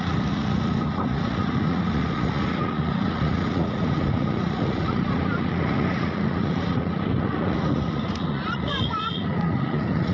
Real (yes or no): no